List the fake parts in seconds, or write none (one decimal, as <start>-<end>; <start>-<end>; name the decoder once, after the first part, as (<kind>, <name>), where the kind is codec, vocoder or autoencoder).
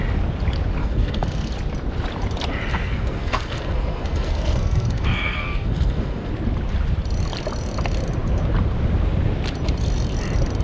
0.8-1.5 (codec, SNAC); 2.7-6.3